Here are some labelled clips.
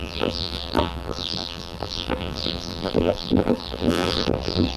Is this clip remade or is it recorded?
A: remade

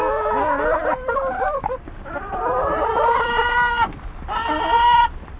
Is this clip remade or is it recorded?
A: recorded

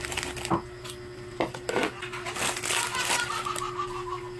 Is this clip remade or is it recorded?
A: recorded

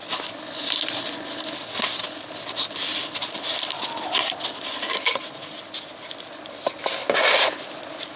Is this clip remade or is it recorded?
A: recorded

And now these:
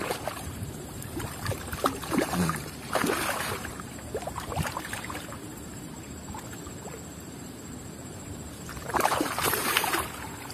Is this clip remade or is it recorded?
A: remade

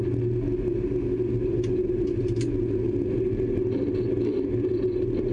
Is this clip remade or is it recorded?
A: recorded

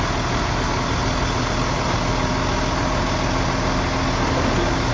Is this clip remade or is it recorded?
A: recorded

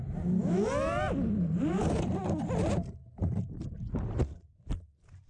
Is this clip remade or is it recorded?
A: recorded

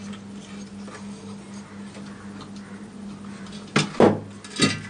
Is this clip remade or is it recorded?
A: recorded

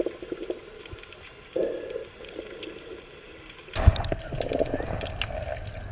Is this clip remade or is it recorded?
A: recorded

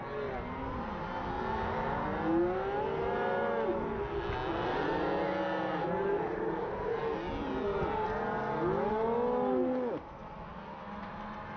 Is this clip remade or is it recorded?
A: recorded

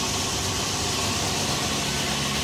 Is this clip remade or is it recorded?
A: recorded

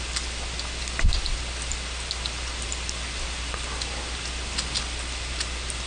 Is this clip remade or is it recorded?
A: recorded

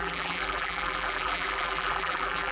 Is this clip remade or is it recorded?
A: remade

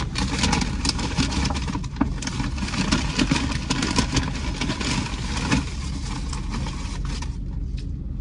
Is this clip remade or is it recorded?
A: recorded